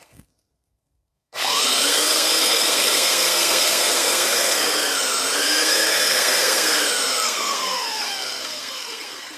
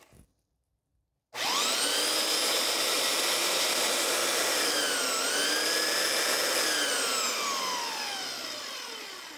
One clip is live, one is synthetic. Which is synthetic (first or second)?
first